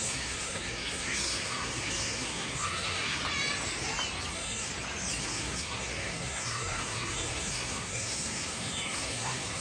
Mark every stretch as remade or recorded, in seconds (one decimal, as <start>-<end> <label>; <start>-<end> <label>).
0.0-3.2 remade; 3.2-4.3 recorded; 4.3-4.7 remade; 4.7-5.2 recorded; 5.2-9.6 remade